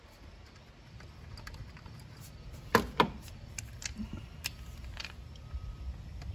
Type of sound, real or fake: real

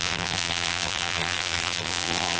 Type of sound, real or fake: fake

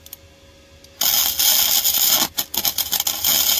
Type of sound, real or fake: real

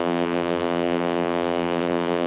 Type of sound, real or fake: fake